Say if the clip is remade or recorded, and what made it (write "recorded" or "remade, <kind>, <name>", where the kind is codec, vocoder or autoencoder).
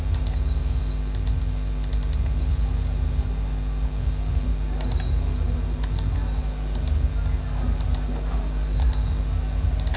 recorded